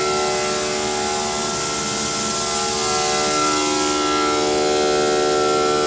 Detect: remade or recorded recorded